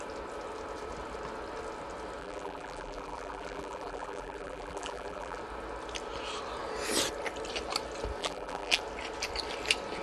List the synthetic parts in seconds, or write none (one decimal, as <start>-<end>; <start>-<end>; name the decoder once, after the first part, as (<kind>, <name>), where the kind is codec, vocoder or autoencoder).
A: 2.2-5.4 (vocoder, BigVGAN v2); 8.2-8.8